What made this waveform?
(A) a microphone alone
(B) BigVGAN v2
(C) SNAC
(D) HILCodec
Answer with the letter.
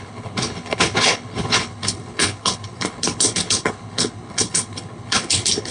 D